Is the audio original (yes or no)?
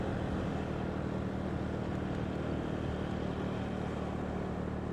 yes